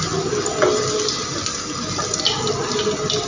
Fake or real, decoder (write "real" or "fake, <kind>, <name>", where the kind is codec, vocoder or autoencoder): real